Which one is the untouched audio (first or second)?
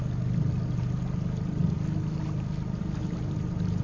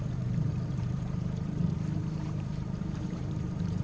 first